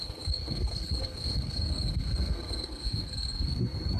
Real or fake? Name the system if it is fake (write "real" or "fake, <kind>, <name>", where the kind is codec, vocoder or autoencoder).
fake, codec, SNAC